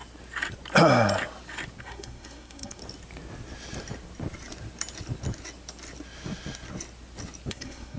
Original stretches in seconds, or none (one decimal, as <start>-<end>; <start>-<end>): 0.0-1.8; 2.8-7.5